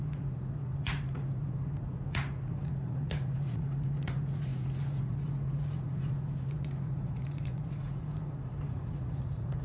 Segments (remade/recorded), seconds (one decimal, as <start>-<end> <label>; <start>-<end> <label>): 0.0-9.6 remade